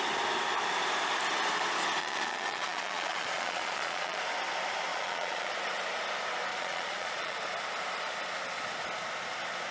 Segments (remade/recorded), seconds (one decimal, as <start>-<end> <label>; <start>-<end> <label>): 0.0-2.0 recorded; 2.0-4.2 remade; 4.2-4.9 recorded; 4.9-5.5 remade; 5.5-6.5 recorded; 6.5-7.4 remade; 7.4-9.7 recorded

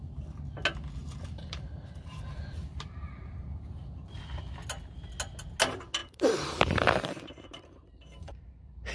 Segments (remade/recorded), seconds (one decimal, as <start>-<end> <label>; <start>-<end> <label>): 0.0-1.0 recorded; 1.0-3.8 remade; 3.8-6.0 recorded; 6.0-8.9 remade